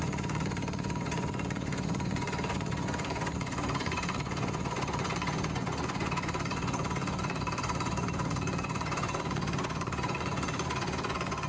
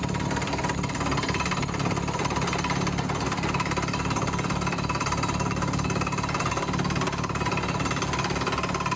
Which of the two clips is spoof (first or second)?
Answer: first